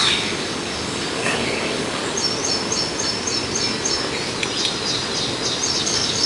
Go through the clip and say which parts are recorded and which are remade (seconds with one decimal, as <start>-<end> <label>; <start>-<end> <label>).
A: 0.0-2.0 remade; 2.0-5.8 recorded; 5.8-6.3 remade